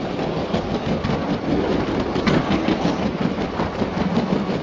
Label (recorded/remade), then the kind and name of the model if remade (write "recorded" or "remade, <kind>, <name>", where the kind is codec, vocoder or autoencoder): recorded